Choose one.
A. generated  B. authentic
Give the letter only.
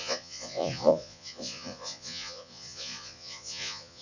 A